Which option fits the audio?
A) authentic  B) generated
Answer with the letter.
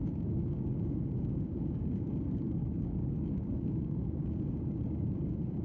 B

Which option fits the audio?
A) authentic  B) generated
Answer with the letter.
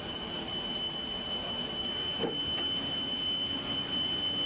A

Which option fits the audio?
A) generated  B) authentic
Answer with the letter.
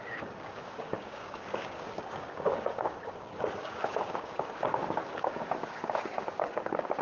A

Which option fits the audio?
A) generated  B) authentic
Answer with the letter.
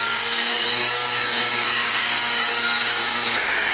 A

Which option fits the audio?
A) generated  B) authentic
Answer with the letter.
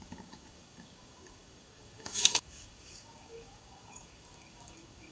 A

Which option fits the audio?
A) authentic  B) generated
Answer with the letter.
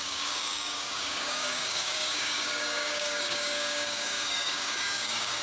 B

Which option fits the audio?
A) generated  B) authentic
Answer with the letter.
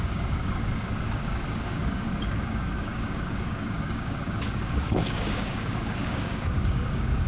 A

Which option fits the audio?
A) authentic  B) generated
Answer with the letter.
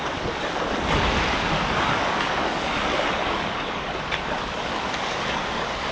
B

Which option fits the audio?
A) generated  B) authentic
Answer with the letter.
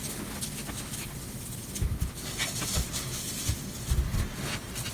B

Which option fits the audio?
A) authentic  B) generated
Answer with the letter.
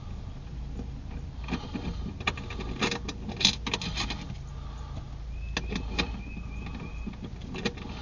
A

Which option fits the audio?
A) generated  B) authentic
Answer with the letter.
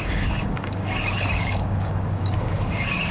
A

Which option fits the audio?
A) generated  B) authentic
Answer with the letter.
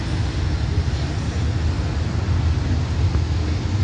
B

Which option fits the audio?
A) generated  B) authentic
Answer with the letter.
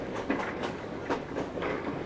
A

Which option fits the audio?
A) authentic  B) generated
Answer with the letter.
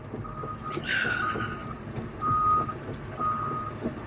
A